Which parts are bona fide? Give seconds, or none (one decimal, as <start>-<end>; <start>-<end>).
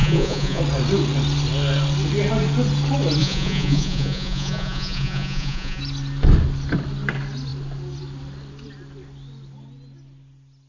0.6-3.2; 5.8-10.7